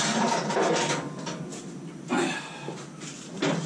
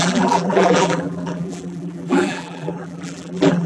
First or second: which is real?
first